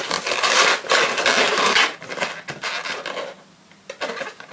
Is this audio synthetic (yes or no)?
no